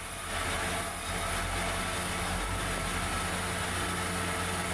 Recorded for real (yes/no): yes